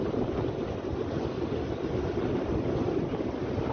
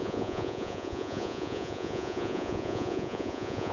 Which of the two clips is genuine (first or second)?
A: first